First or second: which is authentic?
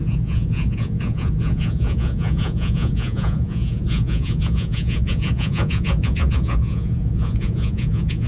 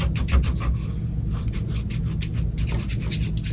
second